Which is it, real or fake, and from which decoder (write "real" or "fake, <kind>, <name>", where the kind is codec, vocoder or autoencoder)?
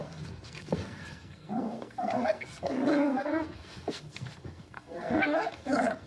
fake, codec, SNAC